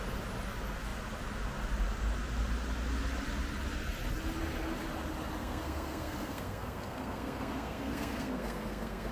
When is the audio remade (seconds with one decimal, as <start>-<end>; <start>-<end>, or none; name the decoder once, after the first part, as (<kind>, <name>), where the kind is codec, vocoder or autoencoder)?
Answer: 5.4-9.1 (codec, SNAC)